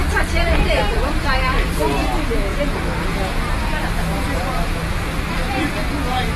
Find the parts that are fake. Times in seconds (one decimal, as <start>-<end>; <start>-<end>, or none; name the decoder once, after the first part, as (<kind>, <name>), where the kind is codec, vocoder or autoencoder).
0.0-2.5 (vocoder, BigVGAN v2); 5.6-6.4